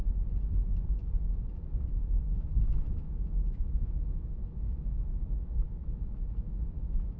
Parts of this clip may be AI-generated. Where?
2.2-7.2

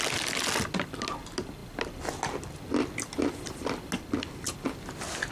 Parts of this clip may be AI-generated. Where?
none